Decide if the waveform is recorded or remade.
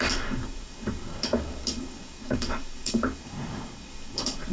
remade